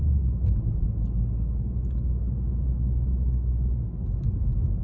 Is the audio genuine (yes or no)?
yes